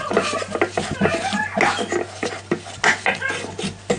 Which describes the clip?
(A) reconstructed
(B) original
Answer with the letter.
B